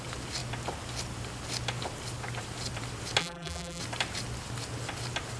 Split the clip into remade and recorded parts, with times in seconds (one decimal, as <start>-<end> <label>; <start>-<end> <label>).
0.0-3.2 recorded; 3.2-3.8 remade; 3.8-5.4 recorded